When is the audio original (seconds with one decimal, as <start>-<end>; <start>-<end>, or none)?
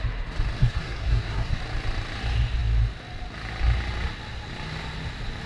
0.0-0.6; 1.6-5.5